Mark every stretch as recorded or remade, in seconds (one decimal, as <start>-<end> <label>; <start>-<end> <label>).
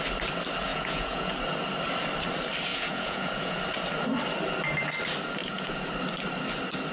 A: 0.0-0.7 recorded; 0.7-1.3 remade; 1.3-2.7 recorded; 2.7-3.6 remade; 3.6-5.4 recorded; 5.4-5.9 remade; 5.9-6.9 recorded